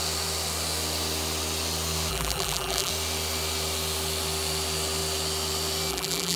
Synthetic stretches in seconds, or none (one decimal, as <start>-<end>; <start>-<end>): 2.1-2.9; 5.9-6.4